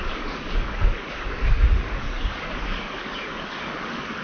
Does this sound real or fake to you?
fake